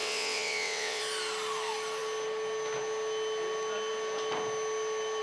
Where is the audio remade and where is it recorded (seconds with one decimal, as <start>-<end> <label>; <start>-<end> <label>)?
0.0-1.0 remade; 1.0-5.2 recorded